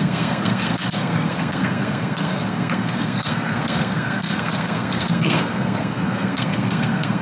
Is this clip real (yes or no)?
no